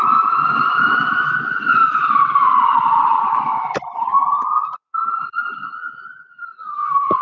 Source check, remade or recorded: recorded